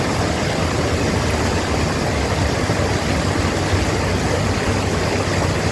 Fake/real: real